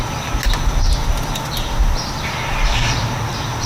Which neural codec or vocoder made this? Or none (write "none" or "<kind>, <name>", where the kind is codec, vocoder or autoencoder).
none